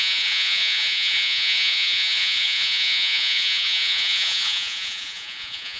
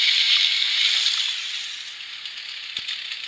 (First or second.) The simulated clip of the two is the first